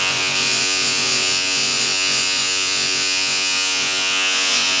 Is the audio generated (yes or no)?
yes